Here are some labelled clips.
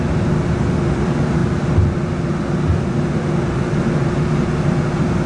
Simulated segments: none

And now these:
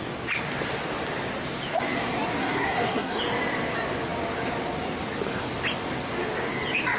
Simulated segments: 2.4-3.2 (codec, SNAC)

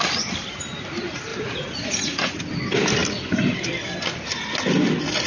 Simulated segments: 1.3-2.4 (vocoder, Vocos)